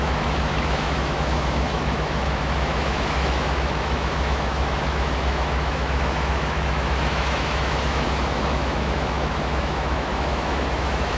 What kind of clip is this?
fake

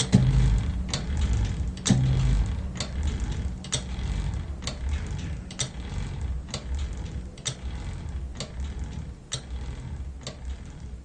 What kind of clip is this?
real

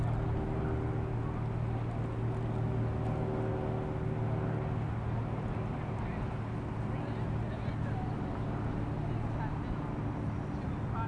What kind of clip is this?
real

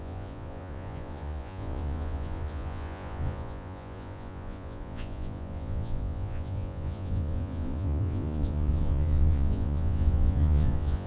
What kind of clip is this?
fake